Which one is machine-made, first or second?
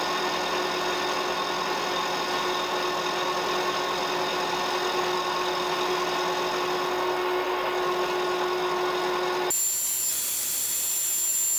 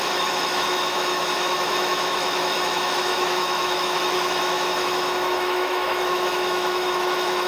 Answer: second